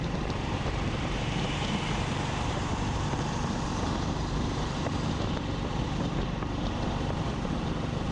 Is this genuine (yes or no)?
no